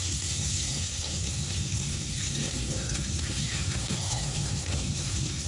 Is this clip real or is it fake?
fake